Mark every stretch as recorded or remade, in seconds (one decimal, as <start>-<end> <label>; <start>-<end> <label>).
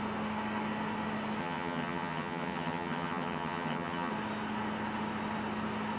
0.0-1.4 recorded; 1.4-4.1 remade; 4.1-6.0 recorded